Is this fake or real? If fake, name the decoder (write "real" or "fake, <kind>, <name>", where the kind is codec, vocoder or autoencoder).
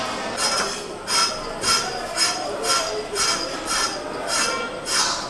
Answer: real